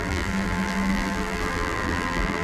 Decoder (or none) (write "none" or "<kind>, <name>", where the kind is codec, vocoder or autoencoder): vocoder, BigVGAN v2